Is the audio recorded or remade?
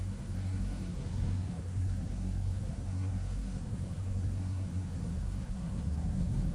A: remade